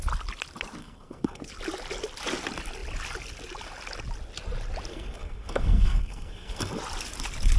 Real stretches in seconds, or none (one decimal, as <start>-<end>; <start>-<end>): 0.0-0.8; 1.4-4.9; 6.8-7.6